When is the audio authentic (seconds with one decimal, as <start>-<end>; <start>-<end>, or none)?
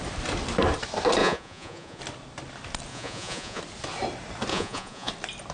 0.0-1.2; 2.0-2.9; 3.6-4.5; 5.1-5.5